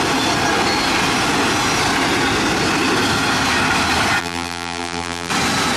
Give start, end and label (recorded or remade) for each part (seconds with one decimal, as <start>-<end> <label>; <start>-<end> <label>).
0.0-4.2 recorded; 4.2-5.3 remade; 5.3-5.8 recorded